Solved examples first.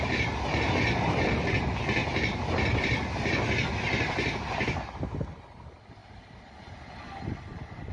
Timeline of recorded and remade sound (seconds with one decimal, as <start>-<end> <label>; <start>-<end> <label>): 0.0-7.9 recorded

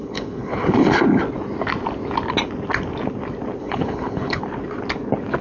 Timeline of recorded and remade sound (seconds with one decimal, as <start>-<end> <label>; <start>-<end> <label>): 0.0-0.9 remade; 0.9-3.6 recorded; 3.6-4.4 remade; 4.4-5.4 recorded

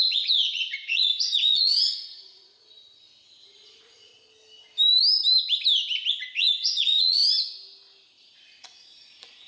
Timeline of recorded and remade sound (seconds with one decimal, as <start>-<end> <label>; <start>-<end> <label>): 0.0-4.1 remade; 4.1-6.4 recorded; 6.4-7.2 remade; 7.2-8.2 recorded; 8.2-9.5 remade

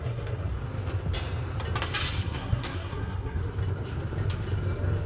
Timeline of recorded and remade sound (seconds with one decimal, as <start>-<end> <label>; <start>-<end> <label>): 0.0-0.5 remade; 0.5-2.2 recorded; 2.2-3.4 remade; 3.4-5.1 recorded

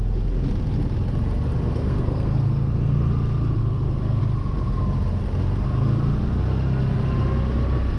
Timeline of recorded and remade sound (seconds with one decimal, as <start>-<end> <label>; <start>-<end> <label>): 0.0-1.8 recorded; 1.8-3.1 remade; 3.1-3.6 recorded; 3.6-4.2 remade; 4.2-8.0 recorded

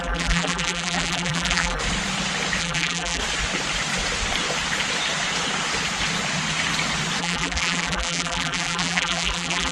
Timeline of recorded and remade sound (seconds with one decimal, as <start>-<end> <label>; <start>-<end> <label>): 0.0-1.8 remade; 1.8-2.6 recorded; 2.6-3.2 remade; 3.2-7.2 recorded; 7.2-9.7 remade

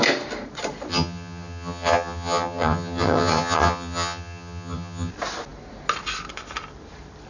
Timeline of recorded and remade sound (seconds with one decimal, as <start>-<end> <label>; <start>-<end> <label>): 0.0-0.9 recorded; 0.9-5.1 remade; 5.1-7.3 recorded